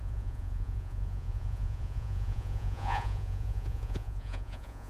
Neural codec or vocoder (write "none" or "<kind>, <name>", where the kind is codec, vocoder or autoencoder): vocoder, Vocos